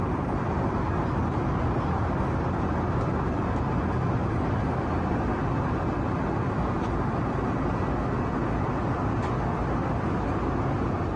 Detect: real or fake real